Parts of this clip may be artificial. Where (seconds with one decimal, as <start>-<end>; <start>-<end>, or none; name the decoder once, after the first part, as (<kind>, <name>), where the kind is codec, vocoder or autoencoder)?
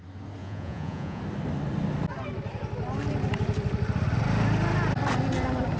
0.4-1.2 (vocoder, Vocos)